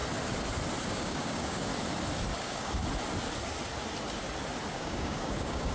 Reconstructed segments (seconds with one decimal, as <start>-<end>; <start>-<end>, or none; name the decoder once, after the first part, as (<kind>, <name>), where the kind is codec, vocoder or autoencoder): 0.9-1.7 (codec, DAC); 2.4-2.8; 4.7-5.7